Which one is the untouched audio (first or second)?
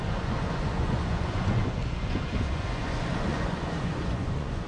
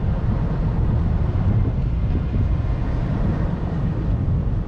second